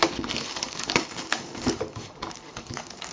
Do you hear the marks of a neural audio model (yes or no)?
yes